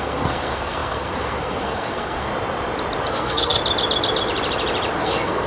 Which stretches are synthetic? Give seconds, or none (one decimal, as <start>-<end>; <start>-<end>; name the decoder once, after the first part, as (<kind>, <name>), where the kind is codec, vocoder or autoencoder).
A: 0.0-2.3 (codec, SNAC); 3.1-3.6; 5.0-5.5